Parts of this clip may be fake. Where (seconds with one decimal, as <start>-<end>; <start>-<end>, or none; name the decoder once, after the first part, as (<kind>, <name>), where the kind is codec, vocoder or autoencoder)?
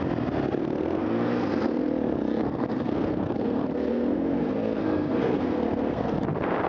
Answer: 0.6-1.9 (codec, SNAC); 2.4-6.1